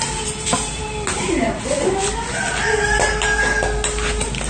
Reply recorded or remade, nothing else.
recorded